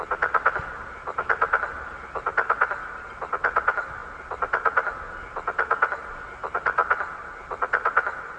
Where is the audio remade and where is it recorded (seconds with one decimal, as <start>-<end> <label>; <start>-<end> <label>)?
0.0-8.4 recorded